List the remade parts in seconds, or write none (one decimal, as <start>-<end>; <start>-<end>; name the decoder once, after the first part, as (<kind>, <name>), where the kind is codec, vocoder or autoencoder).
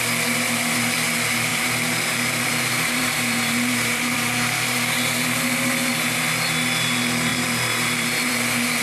1.5-5.0 (vocoder, BigVGAN v2); 7.3-8.3